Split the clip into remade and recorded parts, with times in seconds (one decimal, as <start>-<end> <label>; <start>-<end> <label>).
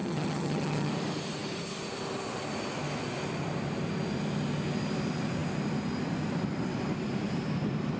0.0-0.9 remade; 0.9-8.0 recorded